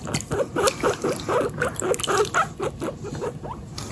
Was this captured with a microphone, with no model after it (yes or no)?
yes